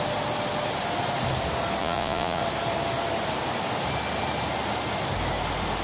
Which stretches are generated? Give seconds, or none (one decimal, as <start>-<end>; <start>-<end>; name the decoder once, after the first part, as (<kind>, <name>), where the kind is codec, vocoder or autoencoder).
1.8-2.4 (vocoder, Vocos)